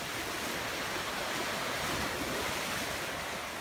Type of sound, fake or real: real